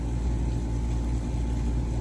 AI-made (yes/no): no